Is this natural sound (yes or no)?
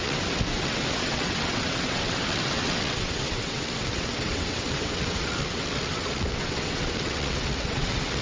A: no